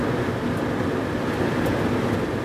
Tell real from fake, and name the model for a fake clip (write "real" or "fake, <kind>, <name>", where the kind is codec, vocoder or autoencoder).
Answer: real